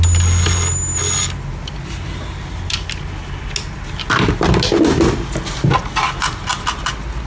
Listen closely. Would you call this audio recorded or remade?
recorded